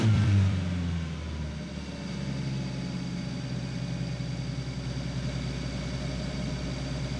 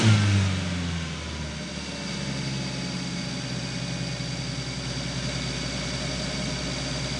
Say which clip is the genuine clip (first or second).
second